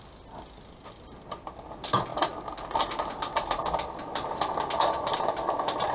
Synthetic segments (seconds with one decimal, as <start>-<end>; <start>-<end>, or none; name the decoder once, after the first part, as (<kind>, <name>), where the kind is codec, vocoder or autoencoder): none